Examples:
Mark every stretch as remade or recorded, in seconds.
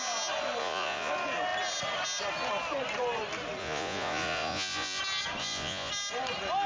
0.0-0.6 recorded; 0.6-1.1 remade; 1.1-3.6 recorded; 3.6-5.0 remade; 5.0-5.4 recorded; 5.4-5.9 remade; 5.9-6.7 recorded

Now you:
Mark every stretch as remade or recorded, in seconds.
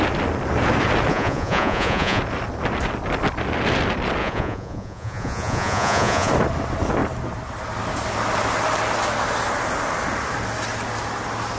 0.0-1.1 recorded; 1.1-2.2 remade; 2.2-4.2 recorded; 4.2-6.3 remade; 6.3-11.6 recorded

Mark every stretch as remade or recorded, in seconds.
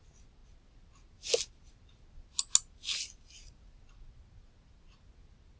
0.0-5.6 recorded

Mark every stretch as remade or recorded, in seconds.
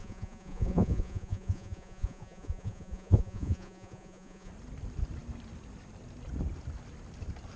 0.0-4.5 remade; 4.5-7.6 recorded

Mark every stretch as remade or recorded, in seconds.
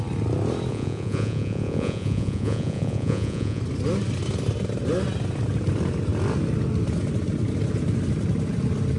0.0-0.7 recorded; 0.7-3.6 remade; 3.6-9.0 recorded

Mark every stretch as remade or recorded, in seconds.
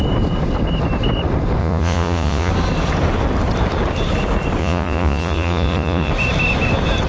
0.0-1.6 recorded; 1.6-2.5 remade; 2.5-4.6 recorded; 4.6-6.1 remade; 6.1-7.1 recorded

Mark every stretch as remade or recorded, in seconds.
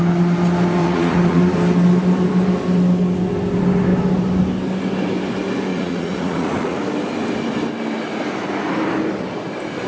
0.0-0.8 recorded; 0.8-1.4 remade; 1.4-5.7 recorded; 5.7-6.8 remade; 6.8-9.9 recorded